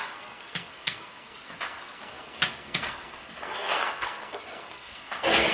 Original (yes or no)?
no